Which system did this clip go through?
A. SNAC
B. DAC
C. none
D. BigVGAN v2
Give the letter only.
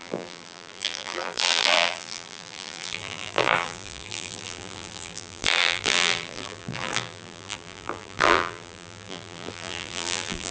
D